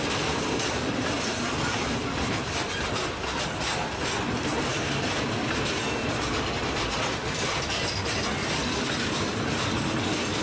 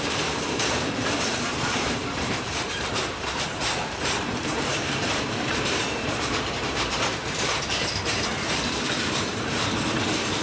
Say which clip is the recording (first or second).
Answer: first